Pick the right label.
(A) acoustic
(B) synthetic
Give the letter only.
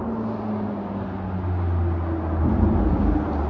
A